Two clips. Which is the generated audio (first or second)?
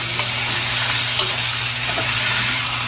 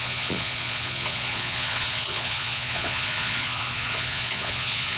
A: second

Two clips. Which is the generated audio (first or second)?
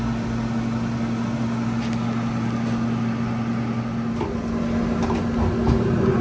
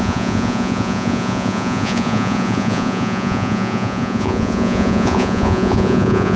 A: second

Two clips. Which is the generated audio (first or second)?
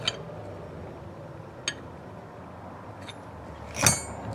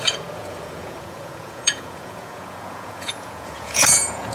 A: second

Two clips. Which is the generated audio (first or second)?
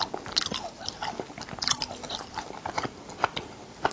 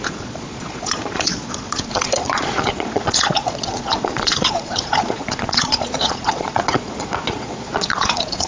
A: second